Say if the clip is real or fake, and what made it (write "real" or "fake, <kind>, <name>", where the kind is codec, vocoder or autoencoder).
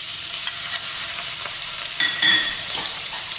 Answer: fake, vocoder, BigVGAN v2